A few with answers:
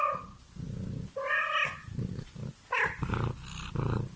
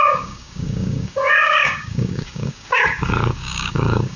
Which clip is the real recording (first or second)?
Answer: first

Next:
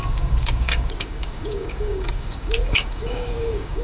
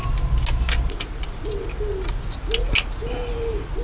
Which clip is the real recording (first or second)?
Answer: second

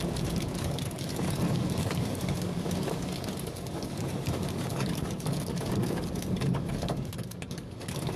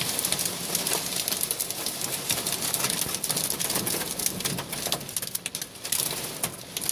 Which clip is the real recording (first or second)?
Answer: second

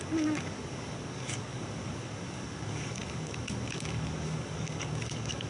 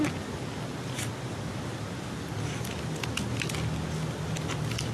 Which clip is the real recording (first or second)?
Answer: second